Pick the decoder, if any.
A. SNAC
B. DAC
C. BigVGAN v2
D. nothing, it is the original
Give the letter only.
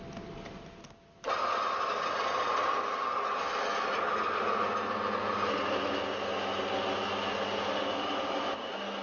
D